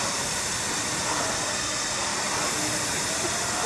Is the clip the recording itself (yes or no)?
yes